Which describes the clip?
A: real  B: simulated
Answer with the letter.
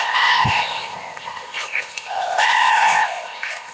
B